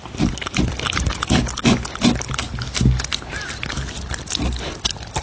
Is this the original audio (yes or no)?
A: yes